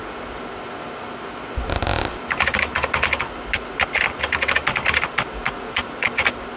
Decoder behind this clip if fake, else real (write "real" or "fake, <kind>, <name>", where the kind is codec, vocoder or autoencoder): real